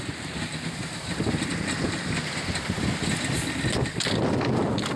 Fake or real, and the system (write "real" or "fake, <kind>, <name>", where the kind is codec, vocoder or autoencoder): real